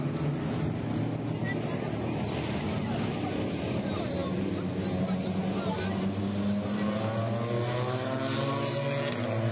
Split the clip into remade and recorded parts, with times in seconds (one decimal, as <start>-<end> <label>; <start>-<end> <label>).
0.0-9.5 recorded